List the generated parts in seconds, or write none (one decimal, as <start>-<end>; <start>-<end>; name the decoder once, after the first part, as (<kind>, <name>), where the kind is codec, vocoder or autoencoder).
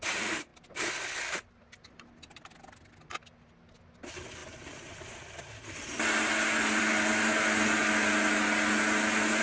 none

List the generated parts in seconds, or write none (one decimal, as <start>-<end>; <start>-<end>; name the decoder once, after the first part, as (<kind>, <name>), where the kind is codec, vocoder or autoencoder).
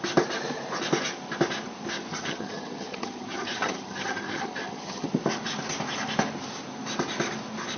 2.1-5.1 (vocoder, HiFi-GAN)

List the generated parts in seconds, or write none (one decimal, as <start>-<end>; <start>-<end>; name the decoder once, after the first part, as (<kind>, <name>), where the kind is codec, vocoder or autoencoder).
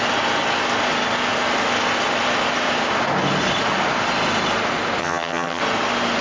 5.0-5.6 (vocoder, HiFi-GAN)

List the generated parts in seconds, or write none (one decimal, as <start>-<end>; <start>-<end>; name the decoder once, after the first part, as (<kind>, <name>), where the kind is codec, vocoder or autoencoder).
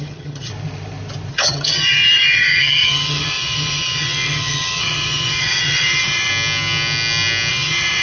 0.0-0.5 (vocoder, HiFi-GAN); 1.3-6.3; 7.5-8.0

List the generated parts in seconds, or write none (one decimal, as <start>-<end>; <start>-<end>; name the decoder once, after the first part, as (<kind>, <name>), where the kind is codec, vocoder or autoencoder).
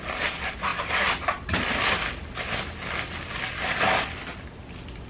none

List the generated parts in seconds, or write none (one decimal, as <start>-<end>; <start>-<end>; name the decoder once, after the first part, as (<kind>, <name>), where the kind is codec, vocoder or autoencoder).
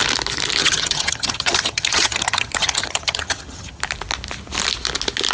0.6-3.8 (vocoder, HiFi-GAN)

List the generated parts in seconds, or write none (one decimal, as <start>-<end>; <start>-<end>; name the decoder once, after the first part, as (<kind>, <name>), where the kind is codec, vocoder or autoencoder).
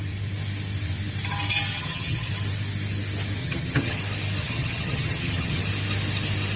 1.7-2.3 (vocoder, HiFi-GAN); 3.4-4.0; 4.4-5.6